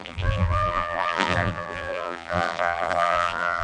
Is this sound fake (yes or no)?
yes